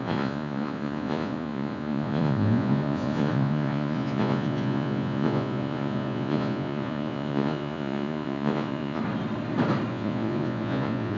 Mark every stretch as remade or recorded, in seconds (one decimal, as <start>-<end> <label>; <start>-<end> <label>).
0.0-9.0 remade; 9.0-9.9 recorded; 9.9-11.2 remade